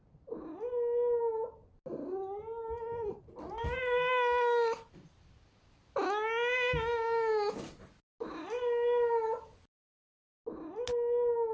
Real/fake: real